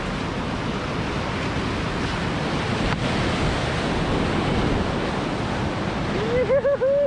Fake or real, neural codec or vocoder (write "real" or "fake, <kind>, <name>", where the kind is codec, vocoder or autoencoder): real